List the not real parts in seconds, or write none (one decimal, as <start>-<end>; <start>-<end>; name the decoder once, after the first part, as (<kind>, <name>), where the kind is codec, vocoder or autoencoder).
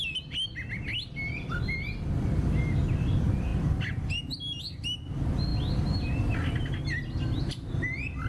none